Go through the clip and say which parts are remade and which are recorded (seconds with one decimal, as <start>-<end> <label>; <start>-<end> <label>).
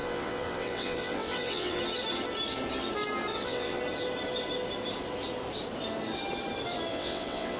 0.0-1.8 remade; 1.8-3.3 recorded; 3.3-3.8 remade; 3.8-6.9 recorded; 6.9-7.6 remade